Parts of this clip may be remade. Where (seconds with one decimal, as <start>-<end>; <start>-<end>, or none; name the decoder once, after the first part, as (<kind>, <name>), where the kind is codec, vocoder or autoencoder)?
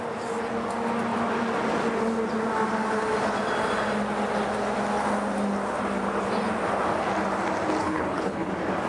7.8-8.5 (codec, HILCodec)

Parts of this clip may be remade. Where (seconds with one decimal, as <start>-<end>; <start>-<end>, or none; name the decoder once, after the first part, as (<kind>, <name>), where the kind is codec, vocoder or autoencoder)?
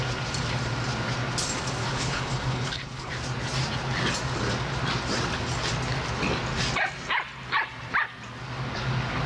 1.8-3.1 (codec, HILCodec)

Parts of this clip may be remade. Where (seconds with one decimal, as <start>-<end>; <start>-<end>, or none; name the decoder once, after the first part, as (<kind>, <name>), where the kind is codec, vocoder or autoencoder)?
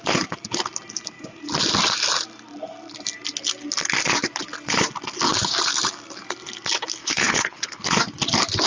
7.0-7.8 (codec, HILCodec)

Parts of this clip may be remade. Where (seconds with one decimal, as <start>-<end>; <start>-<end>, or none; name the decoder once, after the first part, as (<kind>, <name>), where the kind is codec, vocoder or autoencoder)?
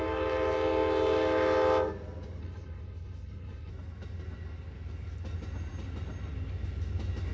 2.4-3.7 (codec, HILCodec)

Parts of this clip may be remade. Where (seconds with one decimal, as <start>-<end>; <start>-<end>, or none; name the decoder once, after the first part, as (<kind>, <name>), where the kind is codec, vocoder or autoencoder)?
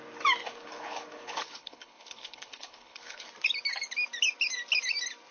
0.4-3.3 (codec, HILCodec)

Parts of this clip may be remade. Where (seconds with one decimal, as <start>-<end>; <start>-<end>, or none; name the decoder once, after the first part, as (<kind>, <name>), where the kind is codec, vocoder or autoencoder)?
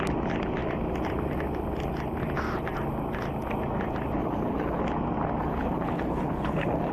4.2-4.8 (codec, HILCodec); 5.4-6.9